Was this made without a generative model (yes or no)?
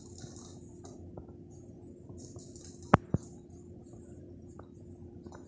yes